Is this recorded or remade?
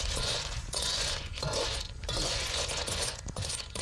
remade